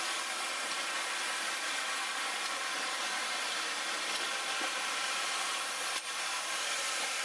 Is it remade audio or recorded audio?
remade